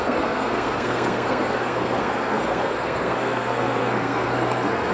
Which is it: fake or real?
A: fake